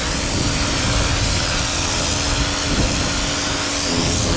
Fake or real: real